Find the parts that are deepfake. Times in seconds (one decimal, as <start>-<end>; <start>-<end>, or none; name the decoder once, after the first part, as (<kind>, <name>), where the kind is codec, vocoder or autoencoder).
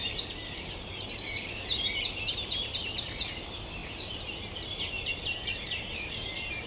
0.0-6.7 (vocoder, BigVGAN v2)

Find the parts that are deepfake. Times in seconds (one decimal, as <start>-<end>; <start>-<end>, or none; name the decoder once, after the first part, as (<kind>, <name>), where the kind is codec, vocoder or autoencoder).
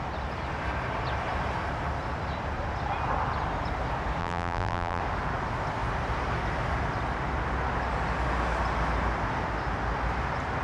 4.2-5.0 (vocoder, BigVGAN v2)